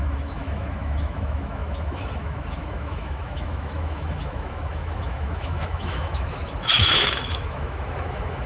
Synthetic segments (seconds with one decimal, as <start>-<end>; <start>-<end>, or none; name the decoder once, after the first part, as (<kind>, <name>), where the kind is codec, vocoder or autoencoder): 0.0-8.5 (autoencoder, DAC-VAE)